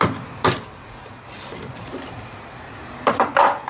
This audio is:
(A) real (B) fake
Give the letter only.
A